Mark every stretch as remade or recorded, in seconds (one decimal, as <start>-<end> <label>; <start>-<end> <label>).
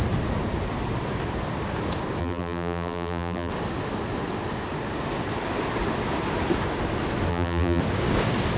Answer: 0.0-2.2 recorded; 2.2-3.5 remade; 3.5-7.3 recorded; 7.3-7.8 remade; 7.8-8.6 recorded